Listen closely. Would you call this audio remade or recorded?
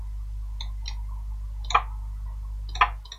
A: recorded